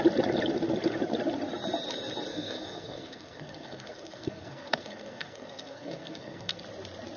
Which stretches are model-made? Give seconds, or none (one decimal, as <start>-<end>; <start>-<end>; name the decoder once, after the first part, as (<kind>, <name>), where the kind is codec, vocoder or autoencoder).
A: 2.3-6.6 (codec, SNAC)